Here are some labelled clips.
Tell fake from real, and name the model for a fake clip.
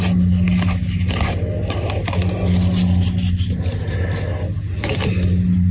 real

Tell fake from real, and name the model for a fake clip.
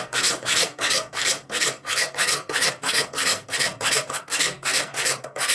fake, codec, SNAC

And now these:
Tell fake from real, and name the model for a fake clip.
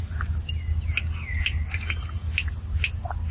real